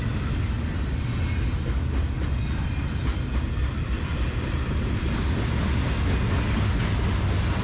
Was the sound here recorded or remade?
recorded